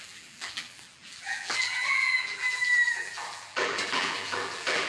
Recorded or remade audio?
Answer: remade